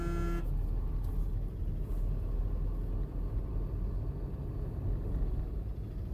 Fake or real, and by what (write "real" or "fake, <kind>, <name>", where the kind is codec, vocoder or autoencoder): real